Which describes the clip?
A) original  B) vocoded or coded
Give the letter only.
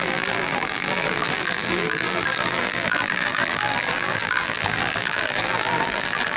B